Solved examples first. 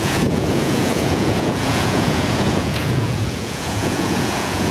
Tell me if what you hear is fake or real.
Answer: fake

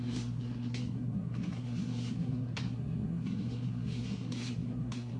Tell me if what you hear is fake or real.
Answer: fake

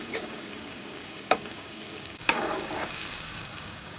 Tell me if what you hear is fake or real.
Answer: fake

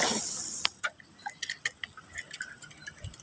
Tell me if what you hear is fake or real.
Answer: real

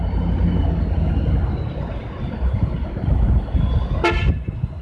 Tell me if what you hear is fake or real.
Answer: real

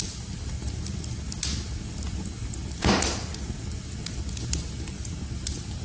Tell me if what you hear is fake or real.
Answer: real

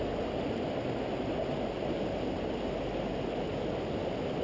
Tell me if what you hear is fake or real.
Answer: real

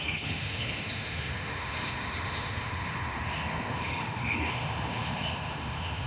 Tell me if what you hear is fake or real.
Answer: fake